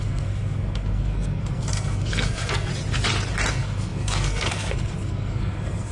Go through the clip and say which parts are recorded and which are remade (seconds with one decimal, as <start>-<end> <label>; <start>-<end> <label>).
0.0-2.7 remade; 2.7-3.5 recorded; 3.5-5.9 remade